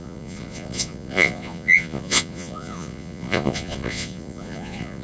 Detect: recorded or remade remade